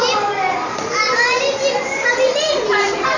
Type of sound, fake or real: fake